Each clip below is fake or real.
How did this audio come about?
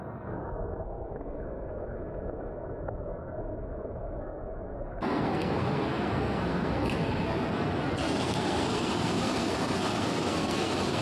fake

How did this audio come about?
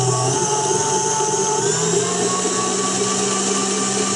real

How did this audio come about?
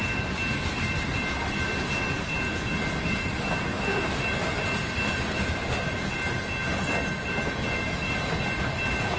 real